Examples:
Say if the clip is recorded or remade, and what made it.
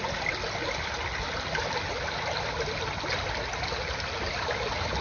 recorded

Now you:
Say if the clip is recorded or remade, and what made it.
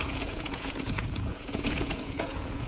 remade, vocoder, Vocos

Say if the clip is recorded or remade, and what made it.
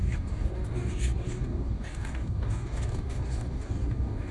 remade, codec, DAC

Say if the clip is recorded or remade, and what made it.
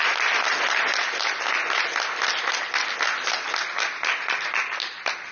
recorded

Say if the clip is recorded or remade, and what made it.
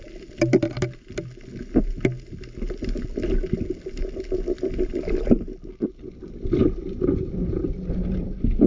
recorded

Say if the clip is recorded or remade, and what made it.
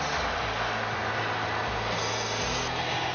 recorded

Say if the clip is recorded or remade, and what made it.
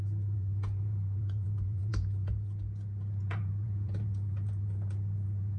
remade, vocoder, Vocos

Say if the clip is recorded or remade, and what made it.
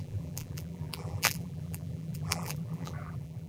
remade, vocoder, BigVGAN v2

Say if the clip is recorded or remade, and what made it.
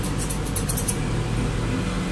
recorded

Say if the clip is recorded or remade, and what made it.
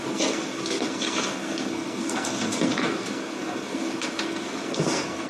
remade, codec, SNAC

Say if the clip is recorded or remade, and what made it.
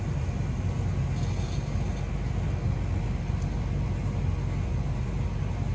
recorded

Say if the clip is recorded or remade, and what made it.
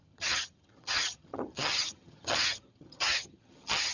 remade, vocoder, HiFi-GAN